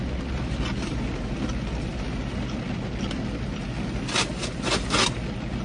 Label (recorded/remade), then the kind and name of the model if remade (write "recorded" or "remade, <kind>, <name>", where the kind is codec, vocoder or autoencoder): recorded